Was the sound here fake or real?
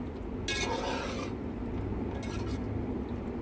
real